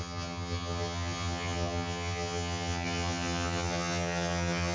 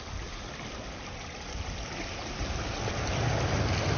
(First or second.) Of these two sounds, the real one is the second